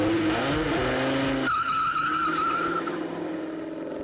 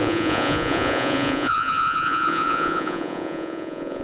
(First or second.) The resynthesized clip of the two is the second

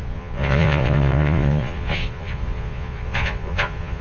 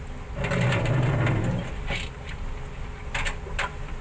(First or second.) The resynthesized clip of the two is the first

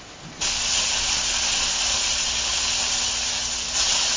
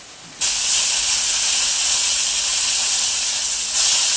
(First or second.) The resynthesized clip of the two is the second